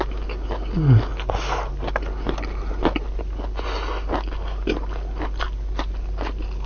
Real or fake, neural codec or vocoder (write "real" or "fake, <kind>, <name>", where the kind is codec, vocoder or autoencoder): real